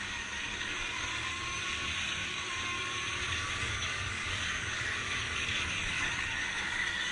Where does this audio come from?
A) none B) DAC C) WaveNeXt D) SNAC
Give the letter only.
B